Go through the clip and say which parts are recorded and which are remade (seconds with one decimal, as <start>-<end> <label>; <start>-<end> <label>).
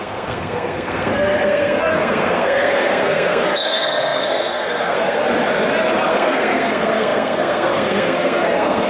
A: 0.0-5.2 remade; 5.2-6.1 recorded; 6.1-8.9 remade